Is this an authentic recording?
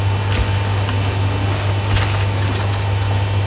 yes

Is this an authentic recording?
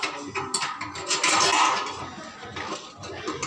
yes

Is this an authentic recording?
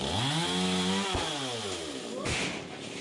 yes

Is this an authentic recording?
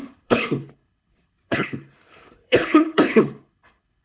no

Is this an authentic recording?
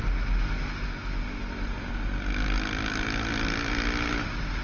yes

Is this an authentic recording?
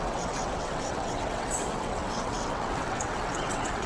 no